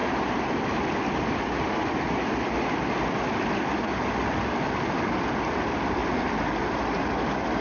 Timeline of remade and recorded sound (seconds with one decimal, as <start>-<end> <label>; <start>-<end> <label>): 0.0-7.6 recorded